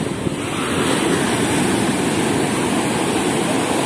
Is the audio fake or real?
real